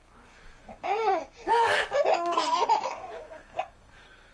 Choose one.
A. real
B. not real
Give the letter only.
B